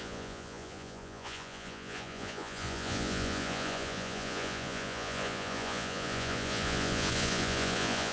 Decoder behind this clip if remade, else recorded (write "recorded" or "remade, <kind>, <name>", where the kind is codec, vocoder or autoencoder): remade, vocoder, Vocos